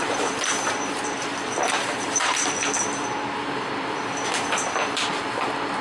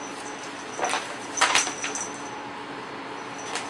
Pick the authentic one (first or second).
second